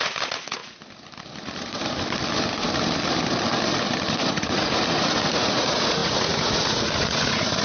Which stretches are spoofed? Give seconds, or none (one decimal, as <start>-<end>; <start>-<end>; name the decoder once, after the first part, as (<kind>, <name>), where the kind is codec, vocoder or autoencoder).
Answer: 0.0-0.6 (vocoder, Vocos); 4.3-7.6